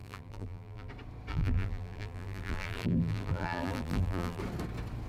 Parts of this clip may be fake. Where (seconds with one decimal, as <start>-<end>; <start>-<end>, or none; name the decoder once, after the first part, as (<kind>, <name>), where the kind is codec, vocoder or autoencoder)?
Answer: 0.0-0.9 (vocoder, BigVGAN v2); 1.3-4.4